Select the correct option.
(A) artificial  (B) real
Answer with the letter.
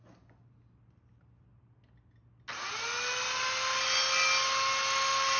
B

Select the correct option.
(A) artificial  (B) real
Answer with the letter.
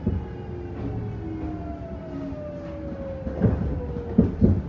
B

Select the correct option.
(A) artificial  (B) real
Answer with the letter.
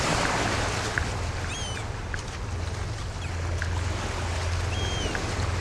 B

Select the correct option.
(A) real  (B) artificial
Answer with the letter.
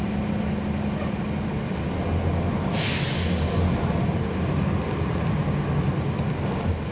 A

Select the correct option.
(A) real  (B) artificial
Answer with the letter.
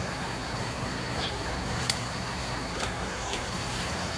B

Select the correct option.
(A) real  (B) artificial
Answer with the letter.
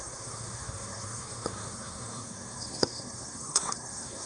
B